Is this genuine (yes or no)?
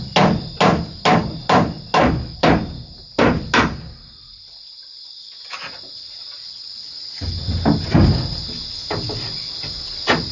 yes